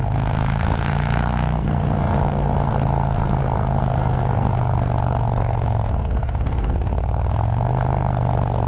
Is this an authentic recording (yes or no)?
no